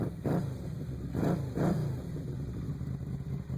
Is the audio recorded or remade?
recorded